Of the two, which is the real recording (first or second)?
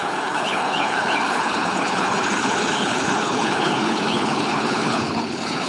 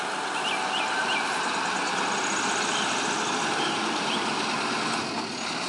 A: second